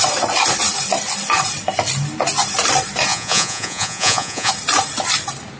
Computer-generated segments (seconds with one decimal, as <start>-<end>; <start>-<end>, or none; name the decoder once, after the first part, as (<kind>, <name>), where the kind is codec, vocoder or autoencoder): 3.1-4.5 (vocoder, Vocos)